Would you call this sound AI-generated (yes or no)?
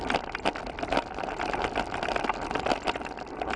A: no